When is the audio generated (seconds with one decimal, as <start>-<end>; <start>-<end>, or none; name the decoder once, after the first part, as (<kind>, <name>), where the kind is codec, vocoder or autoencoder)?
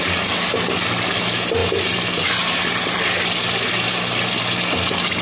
none